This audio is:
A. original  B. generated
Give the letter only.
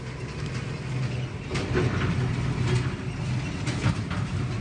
A